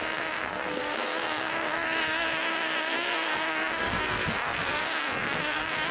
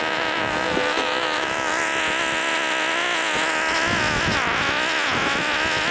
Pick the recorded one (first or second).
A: second